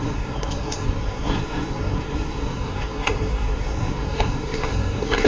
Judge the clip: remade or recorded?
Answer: remade